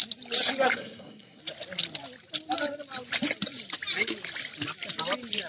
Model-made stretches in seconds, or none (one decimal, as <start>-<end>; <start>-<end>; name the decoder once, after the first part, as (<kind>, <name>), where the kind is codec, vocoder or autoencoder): 0.7-1.4 (codec, SNAC)